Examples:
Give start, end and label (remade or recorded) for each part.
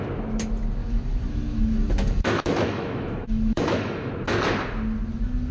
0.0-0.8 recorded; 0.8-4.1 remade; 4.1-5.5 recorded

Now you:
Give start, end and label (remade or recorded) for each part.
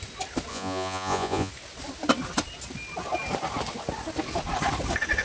0.0-0.5 recorded; 0.5-1.5 remade; 1.5-5.2 recorded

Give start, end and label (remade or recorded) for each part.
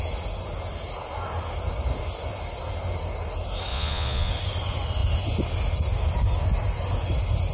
0.0-3.7 recorded; 3.7-4.3 remade; 4.3-7.5 recorded